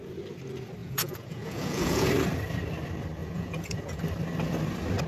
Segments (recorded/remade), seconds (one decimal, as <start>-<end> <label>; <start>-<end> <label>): 0.0-0.8 recorded; 0.8-2.1 remade; 2.1-3.2 recorded; 3.2-4.0 remade; 4.0-5.1 recorded